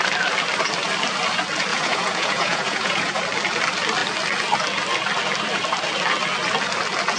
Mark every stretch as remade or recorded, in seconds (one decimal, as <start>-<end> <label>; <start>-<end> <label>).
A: 0.0-1.7 recorded; 1.7-3.2 remade; 3.2-7.2 recorded